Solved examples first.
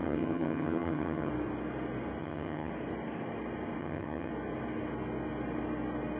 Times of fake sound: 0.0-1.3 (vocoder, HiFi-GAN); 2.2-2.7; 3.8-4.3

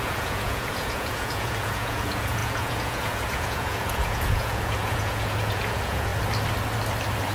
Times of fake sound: 0.0-6.1 (vocoder, Vocos)

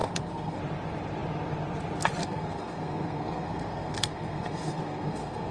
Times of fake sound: 0.0-0.6 (codec, SNAC); 2.2-5.5

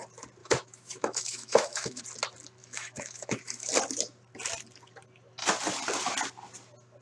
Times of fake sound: 0.4-2.0 (autoencoder, DAC-VAE); 2.6-3.7

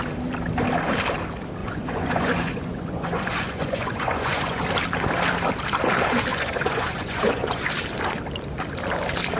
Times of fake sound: 1.6-4.6 (vocoder, Vocos); 6.3-7.7

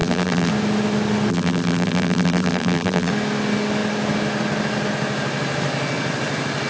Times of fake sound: 0.0-0.5 (vocoder, BigVGAN v2); 1.3-3.1